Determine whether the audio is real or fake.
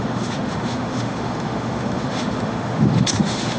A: fake